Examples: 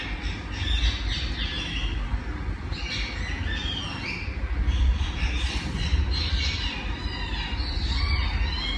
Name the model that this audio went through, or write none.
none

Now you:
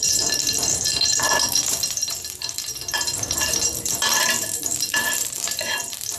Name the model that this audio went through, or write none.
vocoder, BigVGAN v2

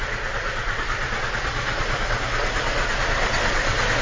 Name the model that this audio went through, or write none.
none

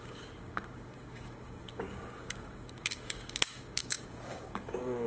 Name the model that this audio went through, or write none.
codec, DAC